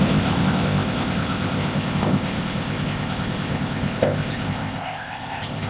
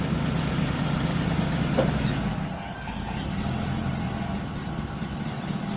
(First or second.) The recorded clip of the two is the second